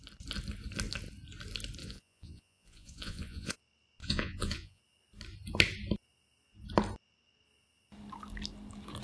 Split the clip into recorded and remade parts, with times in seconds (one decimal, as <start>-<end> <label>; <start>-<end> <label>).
0.0-1.8 recorded; 1.8-3.6 remade; 3.6-4.0 recorded; 4.0-4.8 remade; 4.8-9.0 recorded